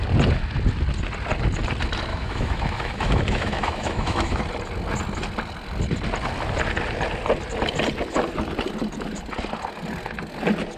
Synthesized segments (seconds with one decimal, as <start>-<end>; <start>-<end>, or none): 2.1-4.4